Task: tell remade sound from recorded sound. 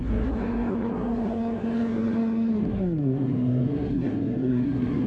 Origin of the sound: remade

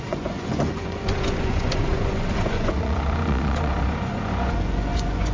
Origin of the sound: remade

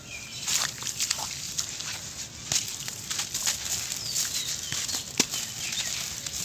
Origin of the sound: recorded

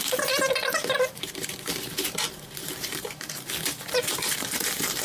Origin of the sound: remade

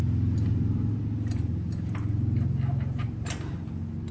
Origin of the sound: recorded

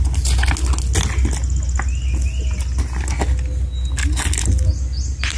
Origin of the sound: recorded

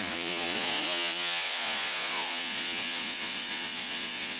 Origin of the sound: remade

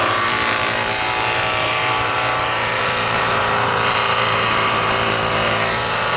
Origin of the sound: remade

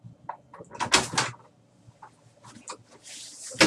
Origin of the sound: recorded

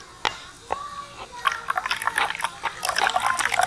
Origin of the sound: recorded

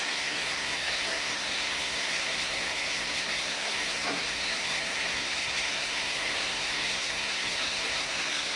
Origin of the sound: remade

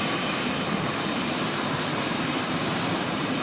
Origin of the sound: remade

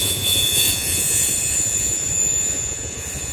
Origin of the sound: remade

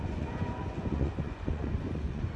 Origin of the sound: remade